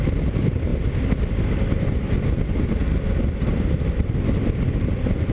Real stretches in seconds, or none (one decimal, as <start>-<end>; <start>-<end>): 0.0-5.3